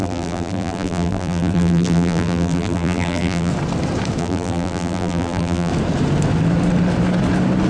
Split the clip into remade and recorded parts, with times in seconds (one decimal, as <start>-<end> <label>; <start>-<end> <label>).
0.0-3.5 remade; 3.5-4.2 recorded; 4.2-5.7 remade; 5.7-7.7 recorded